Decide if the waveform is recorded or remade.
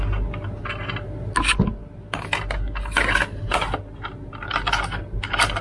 recorded